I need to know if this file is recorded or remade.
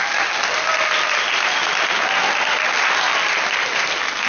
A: recorded